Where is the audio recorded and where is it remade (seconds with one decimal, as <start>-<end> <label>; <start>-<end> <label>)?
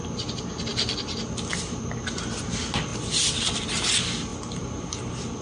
0.0-5.4 recorded